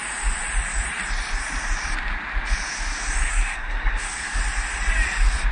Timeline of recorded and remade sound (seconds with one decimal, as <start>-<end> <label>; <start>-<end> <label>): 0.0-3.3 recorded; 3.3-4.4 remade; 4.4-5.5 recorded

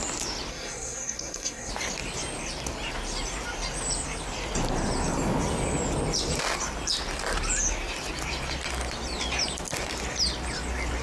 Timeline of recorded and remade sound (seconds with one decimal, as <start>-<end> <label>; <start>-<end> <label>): 0.0-0.5 recorded; 0.5-1.7 remade; 1.7-11.0 recorded

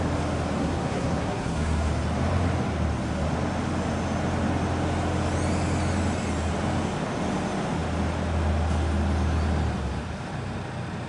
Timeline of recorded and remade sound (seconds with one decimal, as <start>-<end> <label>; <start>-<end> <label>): 0.0-0.6 recorded; 0.6-1.9 remade; 1.9-11.1 recorded

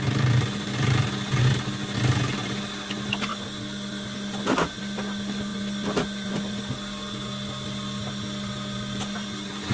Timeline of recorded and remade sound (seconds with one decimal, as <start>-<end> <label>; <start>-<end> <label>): 0.0-9.7 recorded